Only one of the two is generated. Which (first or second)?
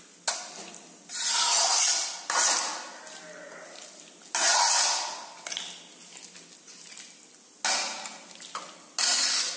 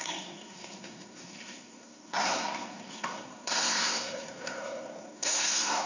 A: second